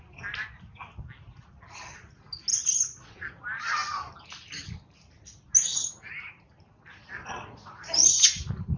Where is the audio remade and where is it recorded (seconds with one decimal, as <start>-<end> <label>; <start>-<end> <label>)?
0.0-2.5 recorded; 2.5-3.3 remade; 3.3-6.9 recorded; 6.9-8.1 remade; 8.1-8.8 recorded